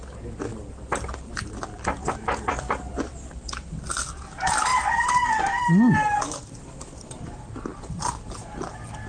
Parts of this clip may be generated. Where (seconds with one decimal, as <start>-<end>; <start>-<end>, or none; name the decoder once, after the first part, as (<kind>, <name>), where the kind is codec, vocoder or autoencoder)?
0.5-2.5 (vocoder, BigVGAN v2); 3.1-3.7